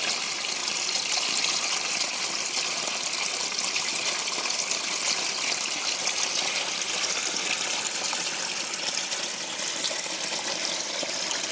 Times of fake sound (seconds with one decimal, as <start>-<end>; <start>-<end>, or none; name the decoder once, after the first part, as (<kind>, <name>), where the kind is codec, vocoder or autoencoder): none